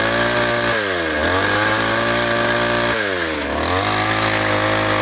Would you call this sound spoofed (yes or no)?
no